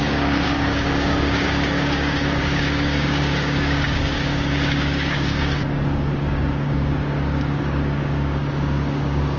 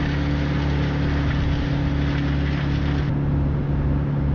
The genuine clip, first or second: second